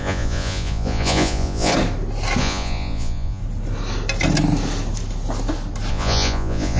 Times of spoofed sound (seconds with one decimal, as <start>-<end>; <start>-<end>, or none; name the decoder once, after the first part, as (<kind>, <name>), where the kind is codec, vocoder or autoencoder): 0.0-1.7 (vocoder, Vocos); 2.4-3.4; 5.9-6.8